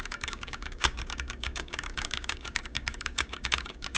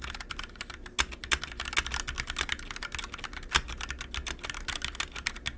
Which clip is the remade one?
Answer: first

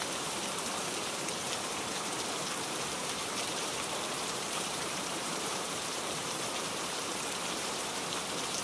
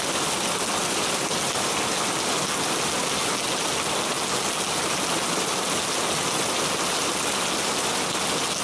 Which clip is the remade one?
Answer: first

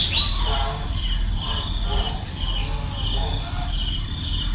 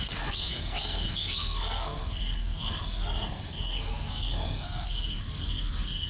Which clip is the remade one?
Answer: second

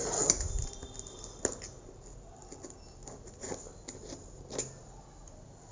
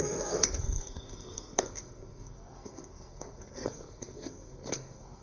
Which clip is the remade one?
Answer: second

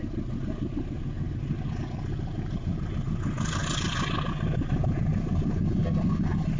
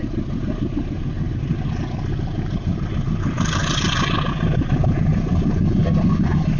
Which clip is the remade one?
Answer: second